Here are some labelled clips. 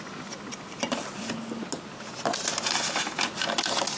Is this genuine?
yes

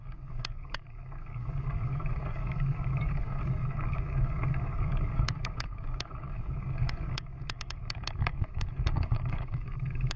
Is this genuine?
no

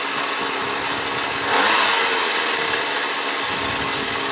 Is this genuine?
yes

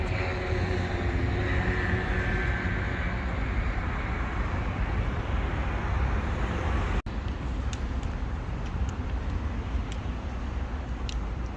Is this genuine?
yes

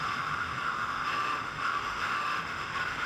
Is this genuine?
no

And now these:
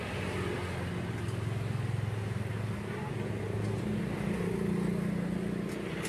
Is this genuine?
yes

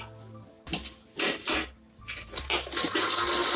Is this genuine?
yes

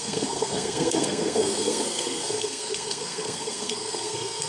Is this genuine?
no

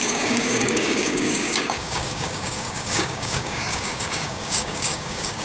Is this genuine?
no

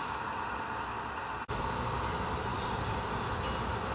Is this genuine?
yes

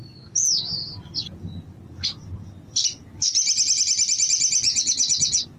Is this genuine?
yes